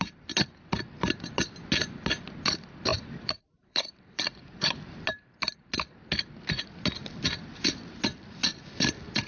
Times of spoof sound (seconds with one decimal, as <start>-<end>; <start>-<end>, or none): 2.9-4.8